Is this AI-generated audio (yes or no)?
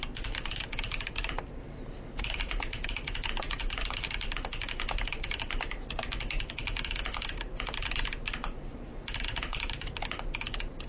no